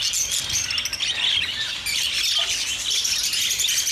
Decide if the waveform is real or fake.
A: real